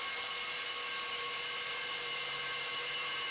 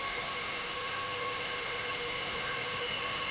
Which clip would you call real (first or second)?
first